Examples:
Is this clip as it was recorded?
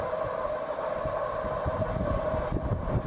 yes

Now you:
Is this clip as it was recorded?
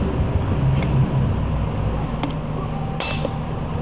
yes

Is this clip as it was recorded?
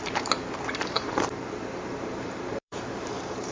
no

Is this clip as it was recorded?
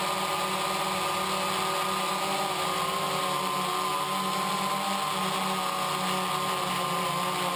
yes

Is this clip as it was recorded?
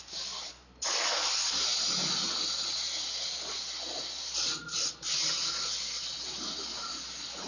yes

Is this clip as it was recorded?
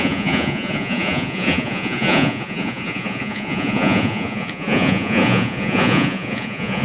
no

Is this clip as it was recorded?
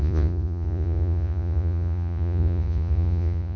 no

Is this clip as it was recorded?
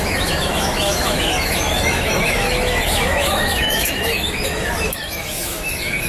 no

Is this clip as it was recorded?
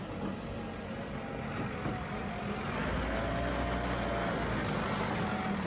yes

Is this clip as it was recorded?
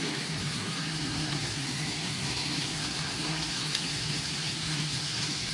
no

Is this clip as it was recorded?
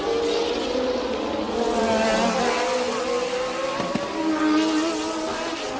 yes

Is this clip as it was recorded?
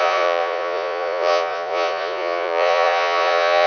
no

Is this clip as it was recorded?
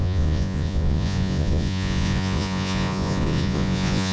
no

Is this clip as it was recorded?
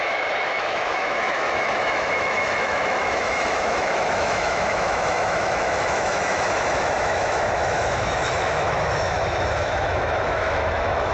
no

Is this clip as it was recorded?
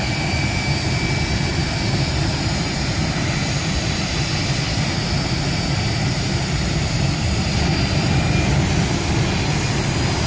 yes